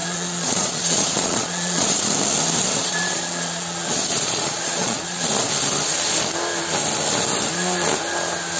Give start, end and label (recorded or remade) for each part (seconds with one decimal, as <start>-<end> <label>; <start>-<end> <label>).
0.0-2.1 remade; 2.1-2.8 recorded; 2.8-5.2 remade; 5.2-8.6 recorded